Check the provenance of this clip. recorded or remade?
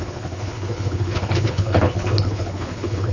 remade